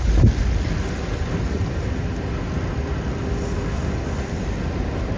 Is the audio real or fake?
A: real